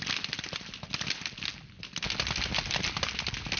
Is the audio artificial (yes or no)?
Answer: no